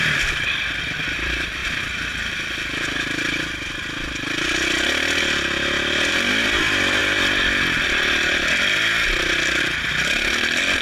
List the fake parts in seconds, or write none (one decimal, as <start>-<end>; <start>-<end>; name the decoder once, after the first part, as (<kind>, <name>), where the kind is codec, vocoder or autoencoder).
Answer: 0.0-1.6 (vocoder, BigVGAN v2); 5.9-7.0; 9.6-10.8